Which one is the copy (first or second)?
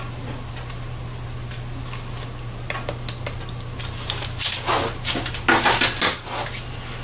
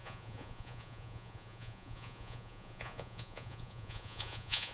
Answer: second